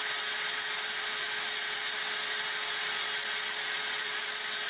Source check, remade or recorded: recorded